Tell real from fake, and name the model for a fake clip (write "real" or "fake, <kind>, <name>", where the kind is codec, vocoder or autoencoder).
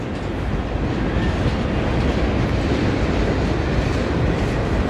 real